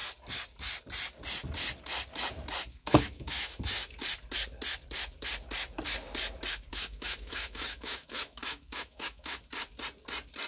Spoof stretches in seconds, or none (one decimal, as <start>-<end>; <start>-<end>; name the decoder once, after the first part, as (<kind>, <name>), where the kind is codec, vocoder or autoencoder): 2.7-3.6 (autoencoder, DAC-VAE); 6.7-9.4